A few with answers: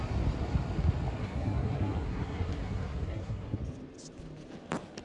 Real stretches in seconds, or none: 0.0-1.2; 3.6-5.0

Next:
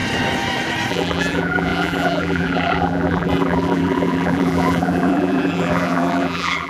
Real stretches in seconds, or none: 0.0-0.9

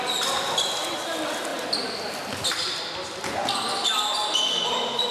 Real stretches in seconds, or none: 0.0-5.1

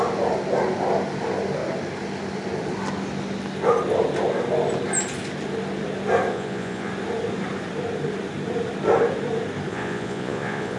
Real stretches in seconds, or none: 0.0-6.3; 6.9-9.7